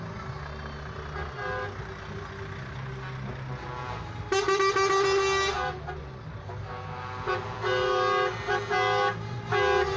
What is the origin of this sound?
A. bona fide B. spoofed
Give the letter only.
A